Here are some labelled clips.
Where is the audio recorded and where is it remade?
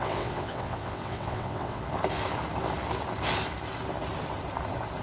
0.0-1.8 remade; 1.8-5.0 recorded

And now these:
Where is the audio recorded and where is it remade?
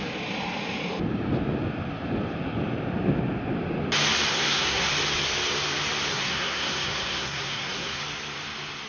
0.0-4.3 recorded; 4.3-4.9 remade; 4.9-6.1 recorded; 6.1-8.0 remade; 8.0-8.9 recorded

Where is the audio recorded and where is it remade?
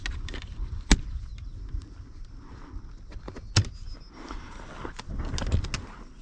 0.0-6.2 recorded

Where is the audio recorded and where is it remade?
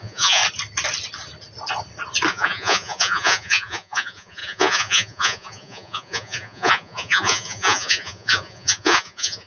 0.0-0.4 remade; 0.4-2.3 recorded; 2.3-9.5 remade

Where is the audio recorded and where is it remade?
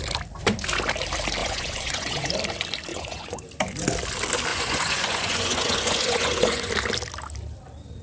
0.0-1.4 recorded; 1.4-2.3 remade; 2.3-2.9 recorded; 2.9-3.5 remade; 3.5-4.5 recorded; 4.5-6.7 remade; 6.7-8.0 recorded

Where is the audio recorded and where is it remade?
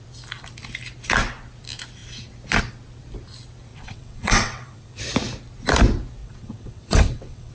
0.0-3.7 recorded; 3.7-5.0 remade; 5.0-6.2 recorded; 6.2-7.5 remade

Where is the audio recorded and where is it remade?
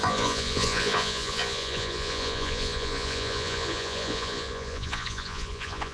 0.0-5.9 remade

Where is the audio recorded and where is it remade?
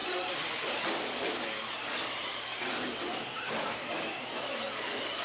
0.0-5.2 recorded